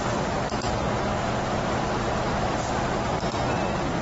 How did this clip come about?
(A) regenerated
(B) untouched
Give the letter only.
A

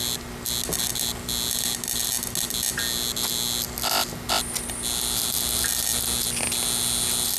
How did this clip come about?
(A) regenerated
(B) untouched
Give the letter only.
B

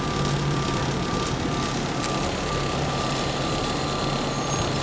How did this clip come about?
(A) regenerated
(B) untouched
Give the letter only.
A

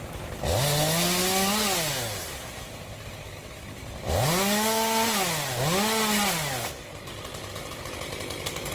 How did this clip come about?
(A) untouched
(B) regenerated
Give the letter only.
A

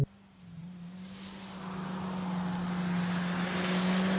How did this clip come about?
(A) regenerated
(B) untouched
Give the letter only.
B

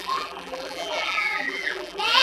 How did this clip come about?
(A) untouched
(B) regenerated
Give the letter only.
B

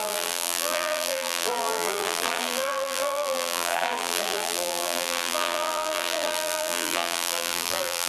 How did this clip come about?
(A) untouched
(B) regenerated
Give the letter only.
B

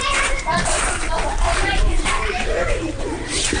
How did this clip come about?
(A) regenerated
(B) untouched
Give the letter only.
A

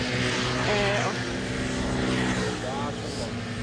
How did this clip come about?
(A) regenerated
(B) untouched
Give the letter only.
B